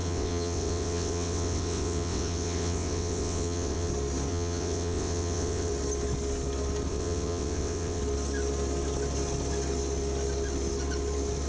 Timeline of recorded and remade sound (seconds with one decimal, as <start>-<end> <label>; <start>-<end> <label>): 0.0-3.9 remade; 3.9-4.3 recorded; 4.3-5.7 remade; 5.7-6.9 recorded; 6.9-8.0 remade; 8.0-11.5 recorded

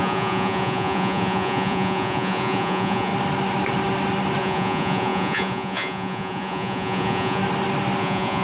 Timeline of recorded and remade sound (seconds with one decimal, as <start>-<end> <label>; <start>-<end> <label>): 0.0-3.1 remade; 3.1-4.4 recorded; 4.4-7.4 remade; 7.4-8.0 recorded; 8.0-8.4 remade

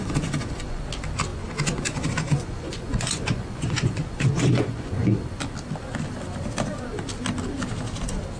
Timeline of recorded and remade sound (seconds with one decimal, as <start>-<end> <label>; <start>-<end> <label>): 0.0-0.8 remade; 0.8-1.3 recorded; 1.3-5.3 remade; 5.3-8.4 recorded

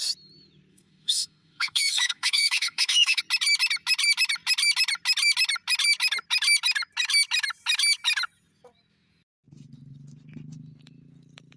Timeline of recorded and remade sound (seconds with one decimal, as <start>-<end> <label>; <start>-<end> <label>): 0.0-0.7 recorded; 0.7-3.2 remade; 3.2-11.6 recorded

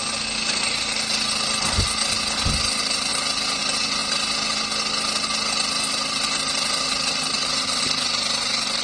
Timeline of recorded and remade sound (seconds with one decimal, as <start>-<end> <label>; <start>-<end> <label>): 0.0-8.8 recorded

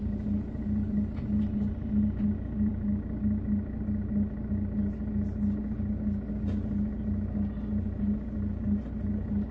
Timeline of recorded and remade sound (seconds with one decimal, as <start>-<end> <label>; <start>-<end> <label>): 0.0-9.5 recorded

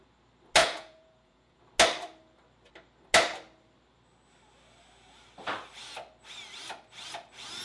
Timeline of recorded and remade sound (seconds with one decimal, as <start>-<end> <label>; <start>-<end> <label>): 0.0-0.6 recorded; 0.6-1.6 remade; 1.6-7.6 recorded

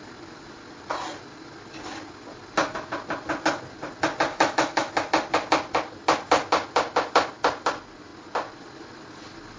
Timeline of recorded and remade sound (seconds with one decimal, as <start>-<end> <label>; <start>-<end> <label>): 0.0-4.3 recorded; 4.3-4.9 remade; 4.9-9.6 recorded